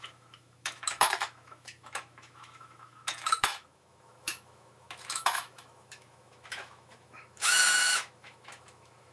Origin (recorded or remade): remade